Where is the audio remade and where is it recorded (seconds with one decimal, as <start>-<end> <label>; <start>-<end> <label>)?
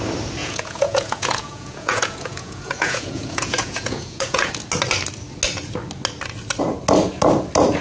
0.0-0.4 recorded; 0.4-4.5 remade; 4.5-7.8 recorded